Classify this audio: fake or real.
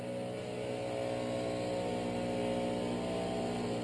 real